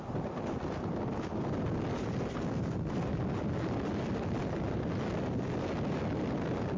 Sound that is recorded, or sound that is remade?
recorded